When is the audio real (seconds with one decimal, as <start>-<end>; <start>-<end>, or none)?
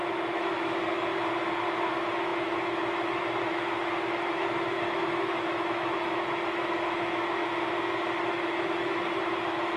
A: 1.1-1.9; 7.4-8.2